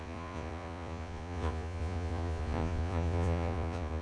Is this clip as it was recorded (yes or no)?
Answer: no